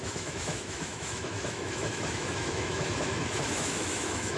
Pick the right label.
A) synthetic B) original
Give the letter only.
A